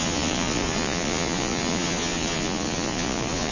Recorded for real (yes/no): no